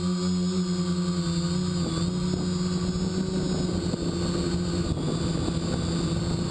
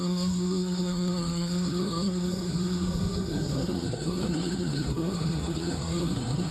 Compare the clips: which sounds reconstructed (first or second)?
second